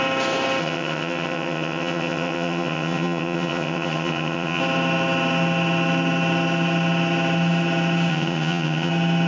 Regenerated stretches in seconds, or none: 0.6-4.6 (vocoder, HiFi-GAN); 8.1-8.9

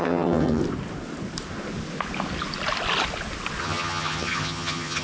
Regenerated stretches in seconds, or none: 0.0-0.6 (vocoder, HiFi-GAN); 3.6-5.0

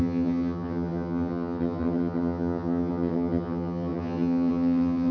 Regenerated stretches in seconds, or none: 0.0-5.1 (vocoder, HiFi-GAN)

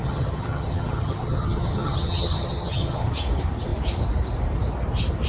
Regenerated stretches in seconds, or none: 0.0-3.1 (vocoder, HiFi-GAN)